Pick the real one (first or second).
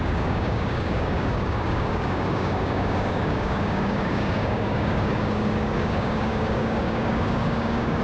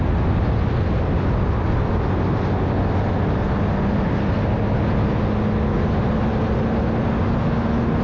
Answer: second